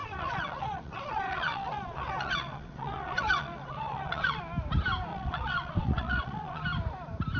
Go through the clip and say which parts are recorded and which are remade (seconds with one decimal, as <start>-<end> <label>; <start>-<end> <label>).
0.0-4.4 remade; 4.4-5.1 recorded; 5.1-6.6 remade; 6.6-7.4 recorded